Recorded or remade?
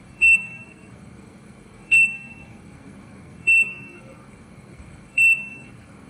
remade